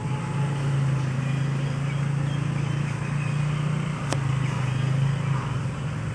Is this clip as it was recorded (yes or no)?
yes